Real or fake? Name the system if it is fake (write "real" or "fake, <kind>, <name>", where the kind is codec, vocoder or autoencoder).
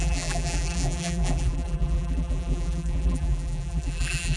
fake, vocoder, BigVGAN v2